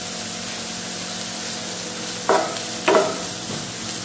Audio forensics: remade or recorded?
recorded